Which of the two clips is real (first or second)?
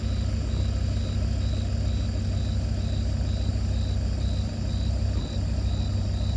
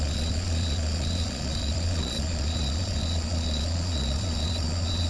first